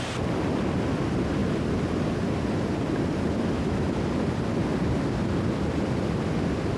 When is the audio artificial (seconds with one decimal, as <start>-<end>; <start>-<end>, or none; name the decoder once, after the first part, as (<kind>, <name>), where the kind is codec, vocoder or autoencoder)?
none